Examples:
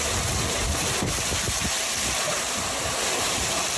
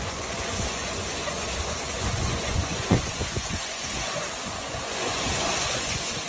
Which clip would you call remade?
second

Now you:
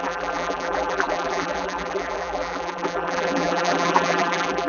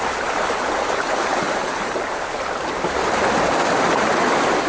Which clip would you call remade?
first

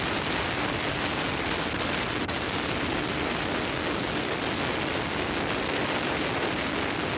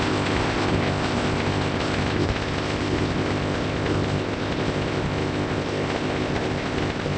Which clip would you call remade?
second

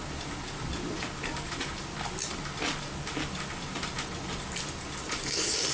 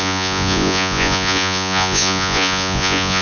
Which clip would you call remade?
second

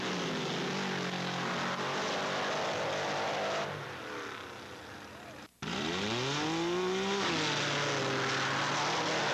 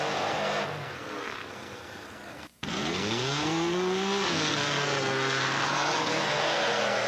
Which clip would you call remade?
second